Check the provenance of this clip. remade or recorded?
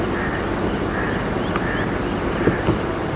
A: recorded